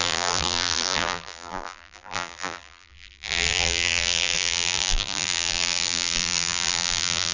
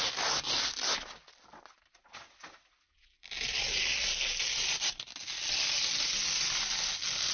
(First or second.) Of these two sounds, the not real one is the first